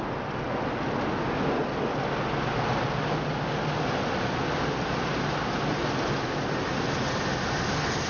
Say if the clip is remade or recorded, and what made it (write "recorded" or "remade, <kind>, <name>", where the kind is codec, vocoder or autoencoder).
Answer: recorded